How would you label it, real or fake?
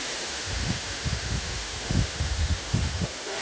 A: fake